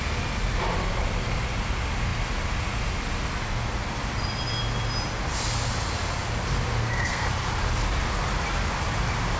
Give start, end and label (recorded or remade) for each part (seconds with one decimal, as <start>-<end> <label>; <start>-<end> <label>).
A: 0.0-6.8 recorded; 6.8-7.3 remade; 7.3-9.4 recorded